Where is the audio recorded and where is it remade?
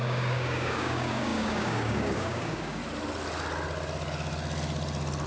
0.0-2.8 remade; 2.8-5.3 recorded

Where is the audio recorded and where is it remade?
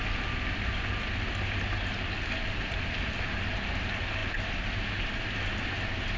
0.0-6.2 recorded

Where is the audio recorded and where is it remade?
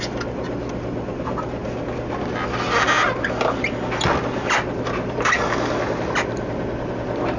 0.0-7.4 recorded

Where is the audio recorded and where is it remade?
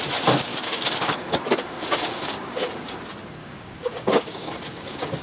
0.0-0.5 recorded; 0.5-3.0 remade; 3.0-3.4 recorded; 3.4-5.2 remade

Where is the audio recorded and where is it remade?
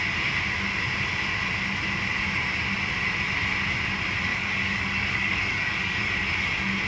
0.0-4.3 recorded; 4.3-6.0 remade; 6.0-6.9 recorded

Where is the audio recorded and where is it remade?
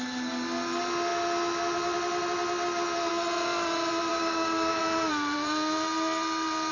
0.0-4.1 recorded; 4.1-4.8 remade; 4.8-6.7 recorded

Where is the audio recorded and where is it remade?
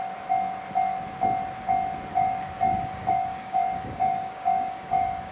0.0-2.1 recorded; 2.1-5.3 remade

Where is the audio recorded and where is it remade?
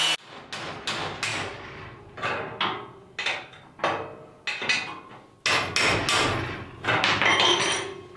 0.0-1.3 recorded; 1.3-1.8 remade; 1.8-8.2 recorded